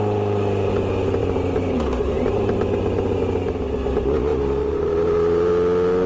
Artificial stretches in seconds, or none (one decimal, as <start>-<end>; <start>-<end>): 1.2-3.2; 4.3-5.5